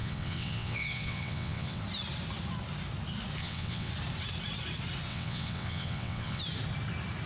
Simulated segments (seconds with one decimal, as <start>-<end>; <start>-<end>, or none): 0.0-1.8; 3.4-3.9; 5.1-6.4